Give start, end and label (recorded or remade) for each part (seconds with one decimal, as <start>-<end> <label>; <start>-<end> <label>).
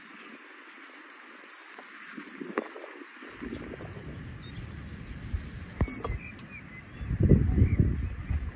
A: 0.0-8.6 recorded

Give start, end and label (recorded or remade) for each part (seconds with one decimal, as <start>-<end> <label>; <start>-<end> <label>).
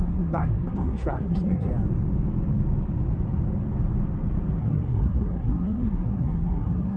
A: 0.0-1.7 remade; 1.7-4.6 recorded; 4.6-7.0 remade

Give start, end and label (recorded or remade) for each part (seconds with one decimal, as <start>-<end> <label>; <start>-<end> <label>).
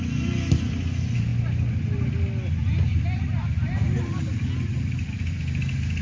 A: 0.0-6.0 recorded